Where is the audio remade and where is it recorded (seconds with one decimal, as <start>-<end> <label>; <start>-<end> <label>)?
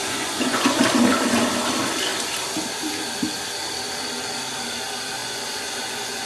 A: 0.0-0.8 remade; 0.8-5.2 recorded; 5.2-6.3 remade